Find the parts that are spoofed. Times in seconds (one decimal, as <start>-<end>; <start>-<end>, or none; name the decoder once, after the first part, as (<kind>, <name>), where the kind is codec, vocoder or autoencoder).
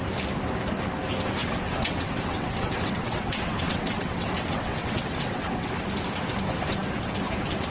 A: 1.4-5.7 (vocoder, WaveNeXt)